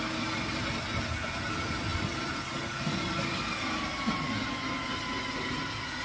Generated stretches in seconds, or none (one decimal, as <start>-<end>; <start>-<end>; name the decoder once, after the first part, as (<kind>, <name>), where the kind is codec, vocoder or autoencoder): none